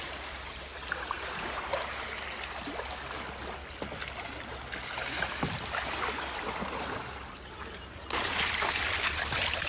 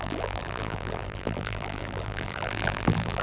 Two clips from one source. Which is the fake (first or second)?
second